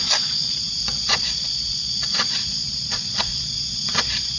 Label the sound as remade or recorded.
remade